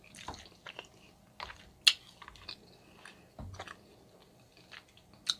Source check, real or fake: real